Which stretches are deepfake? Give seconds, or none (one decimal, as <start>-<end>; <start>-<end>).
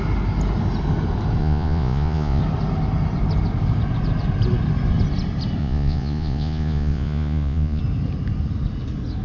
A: 1.4-2.4; 5.6-7.8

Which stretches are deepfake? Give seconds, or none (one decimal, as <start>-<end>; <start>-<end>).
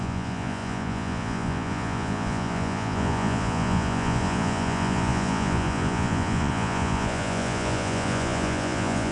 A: 0.0-9.1